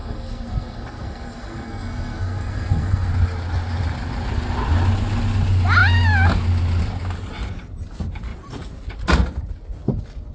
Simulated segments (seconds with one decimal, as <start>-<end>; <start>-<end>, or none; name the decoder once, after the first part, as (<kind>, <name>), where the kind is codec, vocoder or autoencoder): 0.0-3.1 (codec, SNAC)